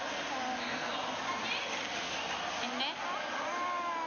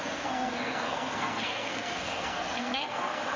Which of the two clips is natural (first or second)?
first